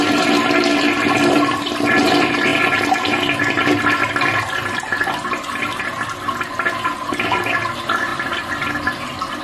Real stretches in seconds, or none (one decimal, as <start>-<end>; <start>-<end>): 0.0-9.4